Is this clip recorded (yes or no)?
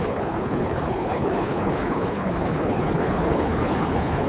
no